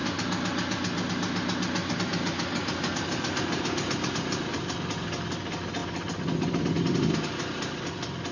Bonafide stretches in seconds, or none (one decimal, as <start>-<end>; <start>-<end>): 0.0-1.8; 4.1-8.3